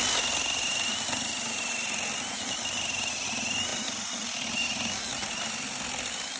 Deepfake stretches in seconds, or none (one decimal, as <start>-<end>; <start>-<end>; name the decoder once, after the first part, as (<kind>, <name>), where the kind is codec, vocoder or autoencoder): none